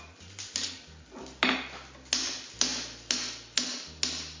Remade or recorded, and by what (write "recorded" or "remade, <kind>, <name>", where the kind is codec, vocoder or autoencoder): recorded